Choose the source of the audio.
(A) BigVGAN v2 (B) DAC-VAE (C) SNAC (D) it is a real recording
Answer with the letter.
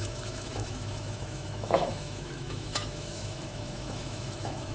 B